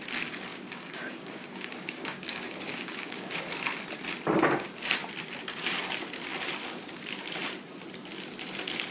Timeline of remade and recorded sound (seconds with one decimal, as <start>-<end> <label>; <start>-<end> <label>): 0.0-0.5 recorded; 0.5-3.4 remade; 3.4-8.9 recorded